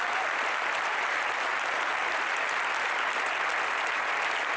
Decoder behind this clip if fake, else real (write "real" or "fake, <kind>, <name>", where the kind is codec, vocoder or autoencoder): real